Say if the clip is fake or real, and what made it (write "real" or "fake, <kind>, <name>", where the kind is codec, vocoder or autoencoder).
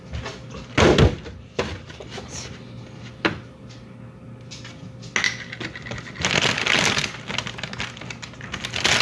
real